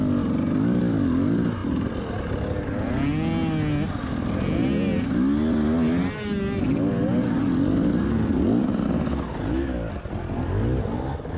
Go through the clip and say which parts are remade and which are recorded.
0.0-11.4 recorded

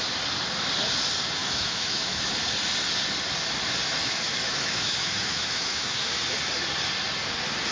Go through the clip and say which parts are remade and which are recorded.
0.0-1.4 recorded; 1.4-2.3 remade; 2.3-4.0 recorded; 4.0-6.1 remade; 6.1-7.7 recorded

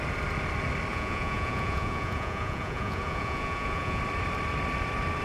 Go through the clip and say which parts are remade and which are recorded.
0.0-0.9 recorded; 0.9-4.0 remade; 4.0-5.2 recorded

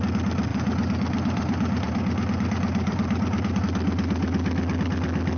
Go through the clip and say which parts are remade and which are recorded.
0.0-0.5 recorded; 0.5-3.6 remade; 3.6-5.4 recorded

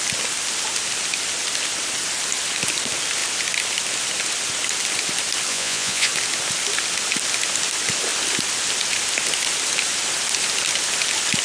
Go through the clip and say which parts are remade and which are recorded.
0.0-5.5 recorded; 5.5-6.1 remade; 6.1-11.4 recorded

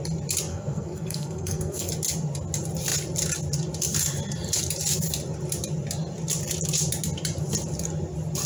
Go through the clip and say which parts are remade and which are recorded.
0.0-0.5 recorded; 0.5-1.9 remade; 1.9-8.5 recorded

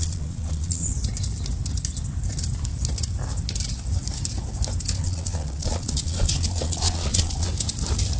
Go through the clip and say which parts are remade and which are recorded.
0.0-0.9 remade; 0.9-5.0 recorded; 5.0-7.5 remade; 7.5-8.2 recorded

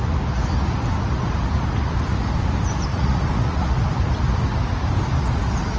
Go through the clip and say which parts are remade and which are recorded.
0.0-2.9 recorded; 2.9-3.7 remade; 3.7-5.8 recorded